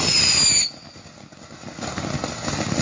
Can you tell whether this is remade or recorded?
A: recorded